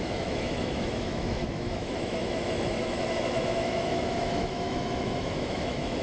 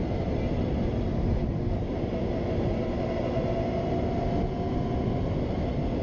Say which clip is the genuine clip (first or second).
second